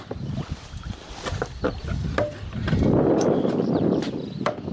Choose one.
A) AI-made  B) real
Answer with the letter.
B